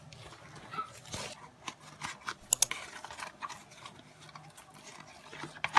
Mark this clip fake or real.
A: real